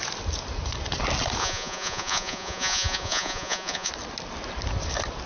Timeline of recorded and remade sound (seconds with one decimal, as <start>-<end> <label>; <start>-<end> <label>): 0.0-1.4 recorded; 1.4-3.9 remade; 3.9-5.3 recorded